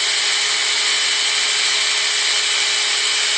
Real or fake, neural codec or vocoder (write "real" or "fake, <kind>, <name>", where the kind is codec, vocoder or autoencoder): real